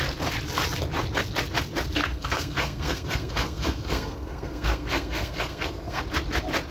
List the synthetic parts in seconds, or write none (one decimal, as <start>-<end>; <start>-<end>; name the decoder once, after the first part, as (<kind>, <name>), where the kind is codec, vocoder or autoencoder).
2.0-6.0 (codec, SNAC)